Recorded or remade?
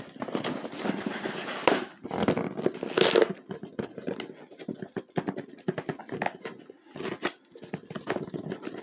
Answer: recorded